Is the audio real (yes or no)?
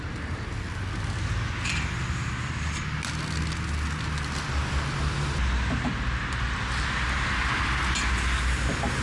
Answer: yes